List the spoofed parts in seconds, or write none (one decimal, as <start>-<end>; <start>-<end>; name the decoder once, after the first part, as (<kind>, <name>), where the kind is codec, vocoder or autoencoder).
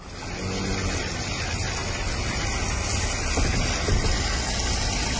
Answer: none